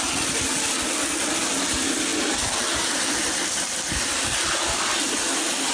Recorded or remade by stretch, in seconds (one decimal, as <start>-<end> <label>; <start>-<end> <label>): 0.0-5.7 recorded